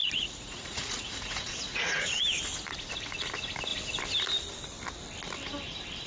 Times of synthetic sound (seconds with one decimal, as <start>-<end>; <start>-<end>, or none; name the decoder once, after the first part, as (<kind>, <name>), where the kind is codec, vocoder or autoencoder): 0.0-2.2 (vocoder, Vocos)